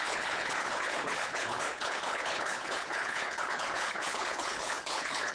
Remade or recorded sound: remade